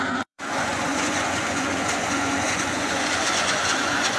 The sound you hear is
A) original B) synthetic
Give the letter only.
B